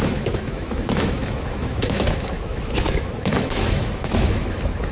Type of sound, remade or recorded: remade